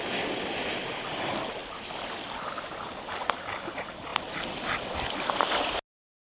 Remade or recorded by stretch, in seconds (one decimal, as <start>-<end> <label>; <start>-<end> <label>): 0.0-6.2 recorded